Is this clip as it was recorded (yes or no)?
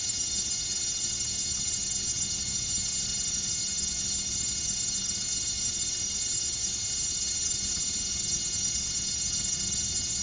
no